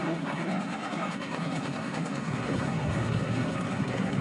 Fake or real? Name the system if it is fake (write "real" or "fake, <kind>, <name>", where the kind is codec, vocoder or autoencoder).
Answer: fake, codec, SNAC